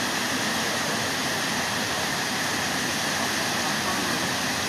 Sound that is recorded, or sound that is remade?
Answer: recorded